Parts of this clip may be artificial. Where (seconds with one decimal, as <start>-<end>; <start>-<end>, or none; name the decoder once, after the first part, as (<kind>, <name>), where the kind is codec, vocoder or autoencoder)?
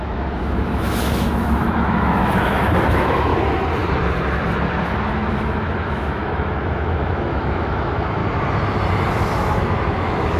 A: 0.0-3.3 (autoencoder, DAC-VAE); 5.3-8.2; 9.1-10.4